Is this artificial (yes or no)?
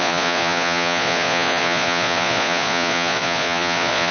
yes